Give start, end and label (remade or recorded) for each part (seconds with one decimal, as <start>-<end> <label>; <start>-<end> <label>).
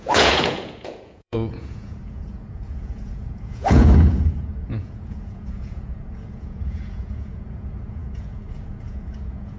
0.0-9.6 remade